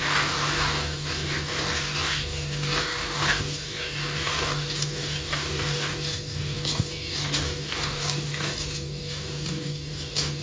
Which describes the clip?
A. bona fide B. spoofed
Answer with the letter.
B